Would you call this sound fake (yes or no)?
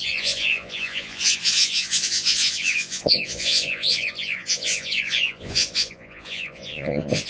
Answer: yes